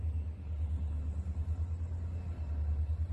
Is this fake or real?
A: real